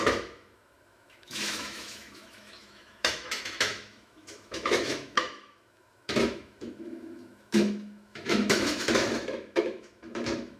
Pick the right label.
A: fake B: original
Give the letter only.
A